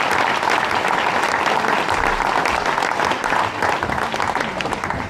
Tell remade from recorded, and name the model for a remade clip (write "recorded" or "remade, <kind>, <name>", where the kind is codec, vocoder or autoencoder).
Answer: recorded